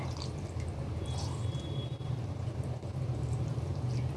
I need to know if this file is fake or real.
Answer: fake